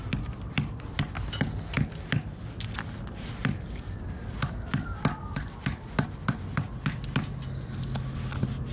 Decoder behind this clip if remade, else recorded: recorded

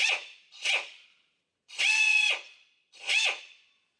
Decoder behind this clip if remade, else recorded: remade, vocoder, Vocos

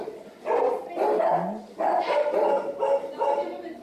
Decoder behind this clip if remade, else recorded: recorded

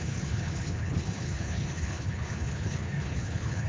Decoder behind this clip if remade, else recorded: remade, codec, HILCodec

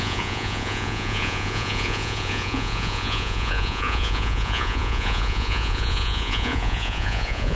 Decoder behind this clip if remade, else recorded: remade, vocoder, Vocos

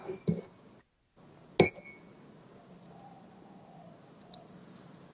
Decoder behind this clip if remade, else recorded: recorded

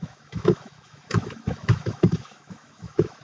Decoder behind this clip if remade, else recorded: remade, autoencoder, DAC-VAE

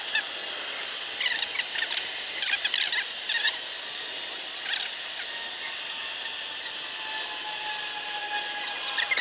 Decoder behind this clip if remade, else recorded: recorded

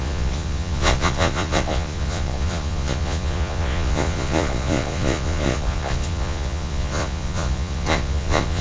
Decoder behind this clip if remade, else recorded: remade, vocoder, Vocos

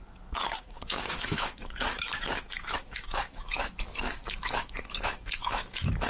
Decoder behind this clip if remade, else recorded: remade, autoencoder, DAC-VAE